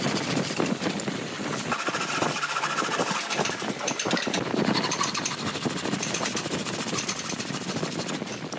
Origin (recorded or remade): remade